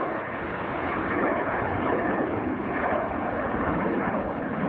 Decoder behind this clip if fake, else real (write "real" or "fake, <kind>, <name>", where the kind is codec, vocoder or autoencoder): fake, codec, HILCodec